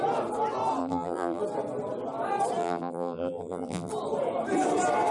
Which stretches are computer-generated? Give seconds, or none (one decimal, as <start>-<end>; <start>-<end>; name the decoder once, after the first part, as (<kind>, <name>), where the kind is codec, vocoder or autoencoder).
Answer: 0.8-1.4 (vocoder, BigVGAN v2); 2.6-3.9